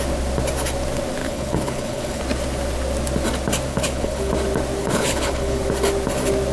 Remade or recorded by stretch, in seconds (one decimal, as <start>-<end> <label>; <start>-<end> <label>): 0.0-1.2 recorded; 1.2-2.2 remade; 2.2-3.7 recorded; 3.7-4.3 remade; 4.3-4.8 recorded; 4.8-5.6 remade; 5.6-6.5 recorded